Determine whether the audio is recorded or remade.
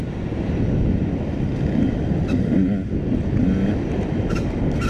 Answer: recorded